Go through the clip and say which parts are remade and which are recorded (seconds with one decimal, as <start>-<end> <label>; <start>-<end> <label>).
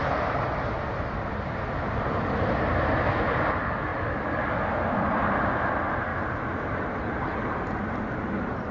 0.0-8.7 recorded